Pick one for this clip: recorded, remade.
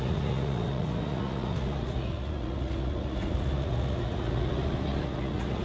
remade